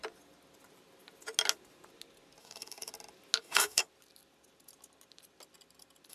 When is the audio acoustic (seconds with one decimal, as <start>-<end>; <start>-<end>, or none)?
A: 0.0-2.4; 2.9-3.4; 3.8-6.1